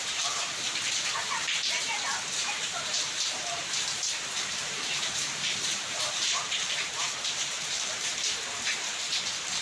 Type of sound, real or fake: fake